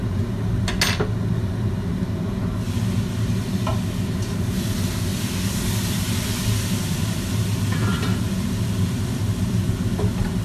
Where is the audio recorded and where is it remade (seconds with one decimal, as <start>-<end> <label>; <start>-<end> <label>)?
0.0-5.1 recorded; 5.1-9.7 remade; 9.7-10.4 recorded